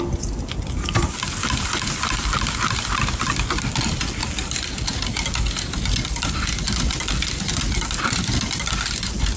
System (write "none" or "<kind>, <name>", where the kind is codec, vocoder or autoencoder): none